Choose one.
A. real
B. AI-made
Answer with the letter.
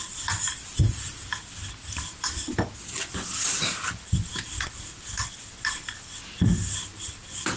A